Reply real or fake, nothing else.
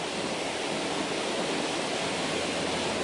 real